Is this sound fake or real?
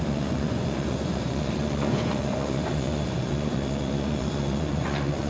fake